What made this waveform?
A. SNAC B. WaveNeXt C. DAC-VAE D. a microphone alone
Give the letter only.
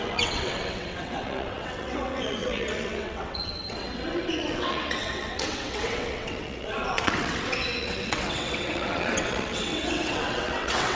B